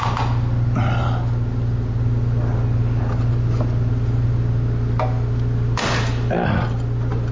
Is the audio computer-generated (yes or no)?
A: no